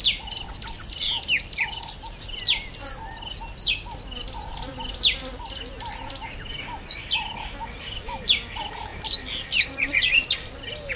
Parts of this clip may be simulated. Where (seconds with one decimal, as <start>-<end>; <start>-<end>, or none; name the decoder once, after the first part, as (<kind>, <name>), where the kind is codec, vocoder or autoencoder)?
none